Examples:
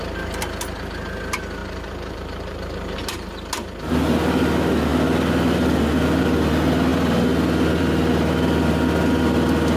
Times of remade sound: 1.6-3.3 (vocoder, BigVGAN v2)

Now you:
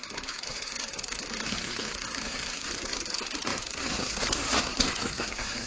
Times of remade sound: 0.0-5.7 (codec, SNAC)

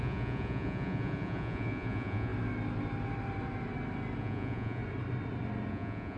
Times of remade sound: 0.0-2.3 (vocoder, Vocos); 4.2-4.8; 5.7-6.2

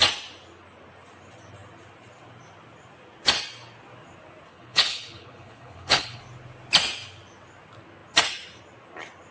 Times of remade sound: 4.5-6.2 (codec, HILCodec)